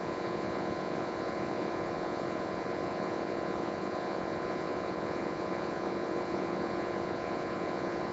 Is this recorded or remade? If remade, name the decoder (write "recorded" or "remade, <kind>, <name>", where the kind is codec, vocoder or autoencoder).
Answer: remade, vocoder, Vocos